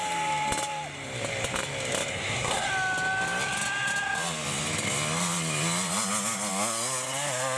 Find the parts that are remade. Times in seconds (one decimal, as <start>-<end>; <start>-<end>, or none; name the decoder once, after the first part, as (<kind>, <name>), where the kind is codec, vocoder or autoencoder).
2.1-2.7 (codec, SNAC)